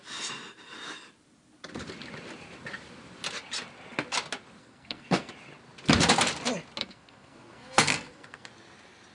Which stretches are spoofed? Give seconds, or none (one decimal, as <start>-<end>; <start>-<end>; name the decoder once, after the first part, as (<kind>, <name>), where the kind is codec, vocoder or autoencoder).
4.6-5.3 (codec, SNAC); 6.8-8.5